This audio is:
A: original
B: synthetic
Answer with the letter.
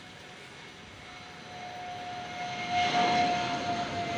A